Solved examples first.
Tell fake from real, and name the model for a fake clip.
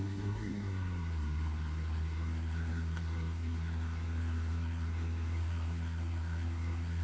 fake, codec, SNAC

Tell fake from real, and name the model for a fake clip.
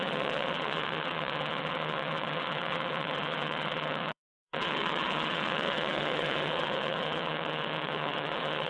fake, vocoder, WaveNeXt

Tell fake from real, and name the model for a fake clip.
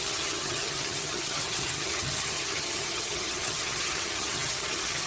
fake, vocoder, HiFi-GAN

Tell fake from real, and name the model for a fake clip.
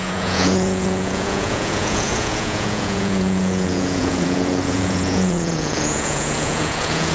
fake, vocoder, Vocos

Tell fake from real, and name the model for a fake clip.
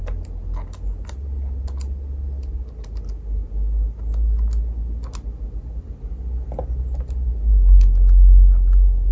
real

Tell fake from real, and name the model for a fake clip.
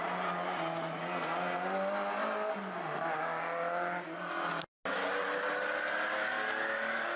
real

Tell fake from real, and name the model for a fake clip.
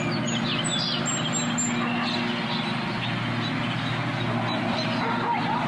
real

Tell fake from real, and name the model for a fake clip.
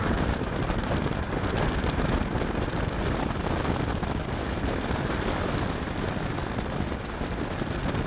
real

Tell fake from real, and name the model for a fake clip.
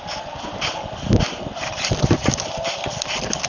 real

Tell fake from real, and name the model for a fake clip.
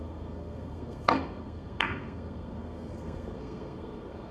fake, codec, SNAC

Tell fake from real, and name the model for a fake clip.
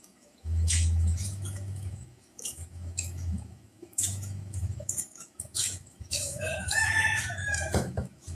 fake, autoencoder, DAC-VAE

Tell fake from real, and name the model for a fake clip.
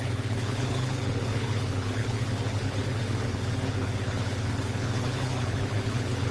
fake, codec, HILCodec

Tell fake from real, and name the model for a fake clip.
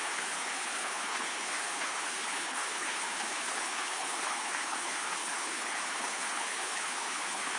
fake, codec, HILCodec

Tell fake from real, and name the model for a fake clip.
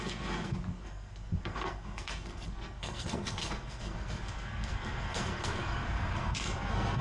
fake, codec, SNAC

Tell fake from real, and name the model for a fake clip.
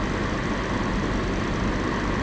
real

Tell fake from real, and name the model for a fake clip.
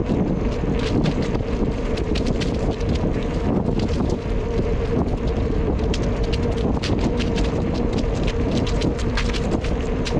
fake, vocoder, BigVGAN v2